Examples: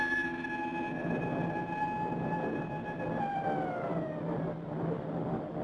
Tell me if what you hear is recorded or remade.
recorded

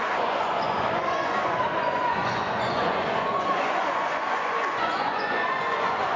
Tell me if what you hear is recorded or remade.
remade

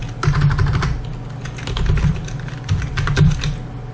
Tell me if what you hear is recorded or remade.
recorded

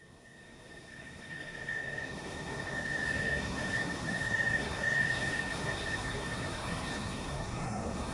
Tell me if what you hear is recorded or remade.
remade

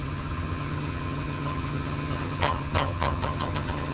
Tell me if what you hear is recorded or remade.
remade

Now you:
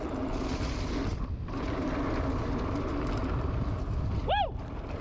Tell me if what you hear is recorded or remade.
recorded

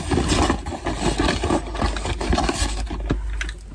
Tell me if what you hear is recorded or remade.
recorded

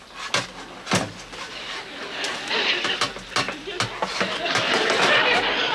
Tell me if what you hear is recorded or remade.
recorded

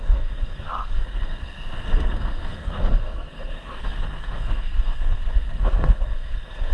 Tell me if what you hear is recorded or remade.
remade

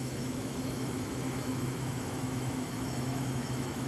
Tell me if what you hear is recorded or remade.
remade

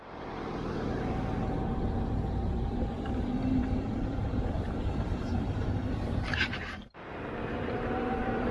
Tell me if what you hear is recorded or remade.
remade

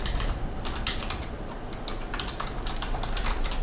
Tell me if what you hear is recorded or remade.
remade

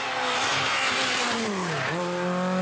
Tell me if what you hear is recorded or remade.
recorded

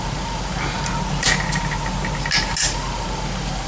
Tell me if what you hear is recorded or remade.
recorded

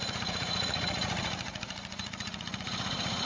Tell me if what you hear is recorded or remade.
remade